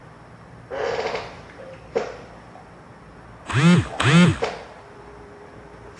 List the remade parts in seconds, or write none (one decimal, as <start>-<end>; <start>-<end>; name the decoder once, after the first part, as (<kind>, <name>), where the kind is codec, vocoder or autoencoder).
none